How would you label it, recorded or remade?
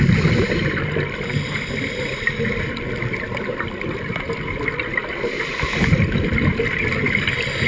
recorded